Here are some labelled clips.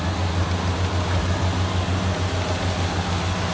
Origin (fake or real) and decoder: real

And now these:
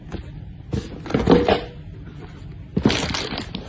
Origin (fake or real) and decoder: real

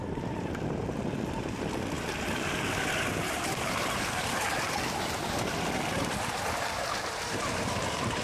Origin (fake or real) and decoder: real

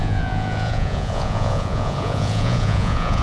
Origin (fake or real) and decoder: fake, vocoder, Vocos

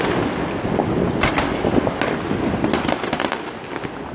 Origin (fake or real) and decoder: real